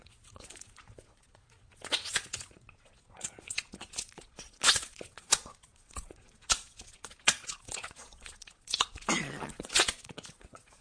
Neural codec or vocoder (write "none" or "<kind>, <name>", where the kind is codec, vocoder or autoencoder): vocoder, Vocos